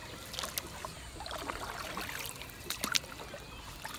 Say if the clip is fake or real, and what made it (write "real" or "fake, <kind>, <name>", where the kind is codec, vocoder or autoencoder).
real